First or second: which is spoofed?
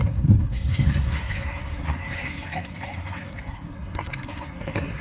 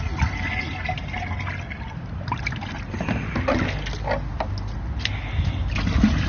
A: first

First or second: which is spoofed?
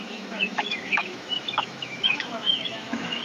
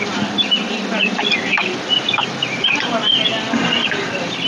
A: first